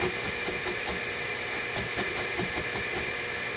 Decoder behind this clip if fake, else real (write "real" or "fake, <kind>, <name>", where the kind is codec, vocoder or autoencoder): real